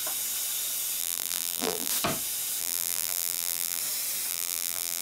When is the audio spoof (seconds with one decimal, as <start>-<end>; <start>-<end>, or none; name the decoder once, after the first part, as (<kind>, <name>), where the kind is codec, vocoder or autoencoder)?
1.0-1.9 (vocoder, BigVGAN v2); 2.6-3.8; 4.3-5.0